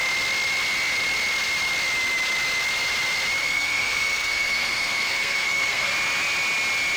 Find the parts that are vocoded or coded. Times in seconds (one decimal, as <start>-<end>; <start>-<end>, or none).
3.4-5.9